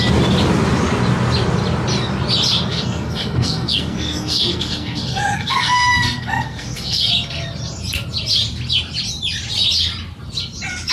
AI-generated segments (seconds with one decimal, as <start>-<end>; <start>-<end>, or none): 2.7-7.1